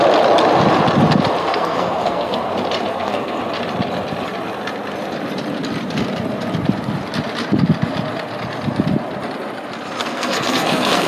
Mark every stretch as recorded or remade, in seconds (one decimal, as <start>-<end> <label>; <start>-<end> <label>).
0.0-1.4 recorded; 1.4-2.5 remade; 2.5-2.9 recorded; 2.9-3.4 remade; 3.4-10.0 recorded; 10.0-11.1 remade